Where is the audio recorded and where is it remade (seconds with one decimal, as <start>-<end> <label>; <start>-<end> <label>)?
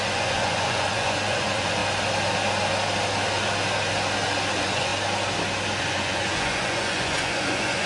0.0-1.8 remade; 1.8-4.5 recorded; 4.5-4.9 remade; 4.9-5.8 recorded; 5.8-7.9 remade